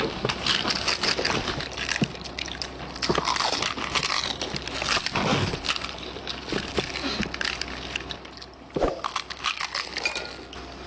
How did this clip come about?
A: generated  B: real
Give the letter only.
B